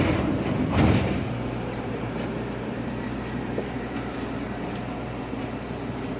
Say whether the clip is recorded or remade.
remade